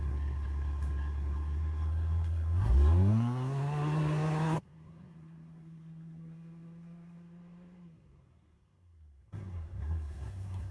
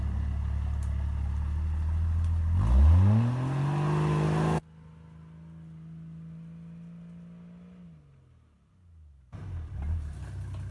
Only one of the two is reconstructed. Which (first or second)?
first